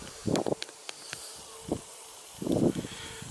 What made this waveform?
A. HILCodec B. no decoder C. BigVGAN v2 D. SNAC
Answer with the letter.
B